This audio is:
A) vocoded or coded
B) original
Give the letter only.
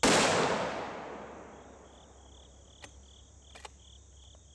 B